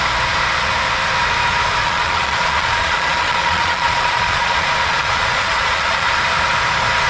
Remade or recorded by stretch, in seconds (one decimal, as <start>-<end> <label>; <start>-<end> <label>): 0.0-1.8 recorded; 1.8-6.1 remade; 6.1-7.1 recorded